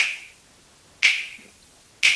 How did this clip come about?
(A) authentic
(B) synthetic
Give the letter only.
A